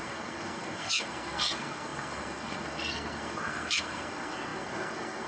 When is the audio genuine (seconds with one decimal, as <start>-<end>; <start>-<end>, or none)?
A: none